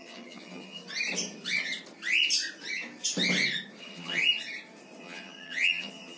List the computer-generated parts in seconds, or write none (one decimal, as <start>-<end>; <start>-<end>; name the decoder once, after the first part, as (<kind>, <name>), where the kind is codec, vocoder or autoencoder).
0.0-0.8 (vocoder, HiFi-GAN); 3.8-4.2; 5.0-6.2